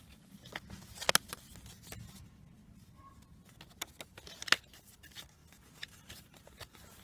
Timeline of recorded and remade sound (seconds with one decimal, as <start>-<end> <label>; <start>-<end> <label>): 0.0-7.0 recorded